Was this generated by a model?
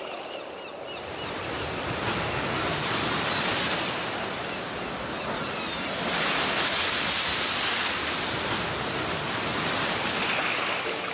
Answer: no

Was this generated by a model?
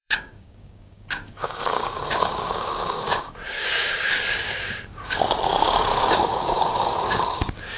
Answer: yes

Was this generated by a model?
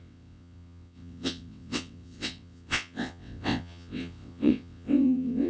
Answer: yes